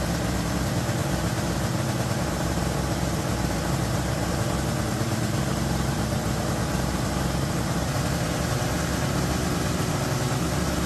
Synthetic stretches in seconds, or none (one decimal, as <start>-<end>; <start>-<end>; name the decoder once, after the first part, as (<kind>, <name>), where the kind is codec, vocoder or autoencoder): 0.0-10.9 (vocoder, BigVGAN v2)